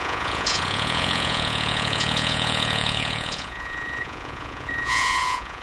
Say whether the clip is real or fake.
fake